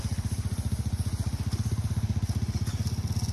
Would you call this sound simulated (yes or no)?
no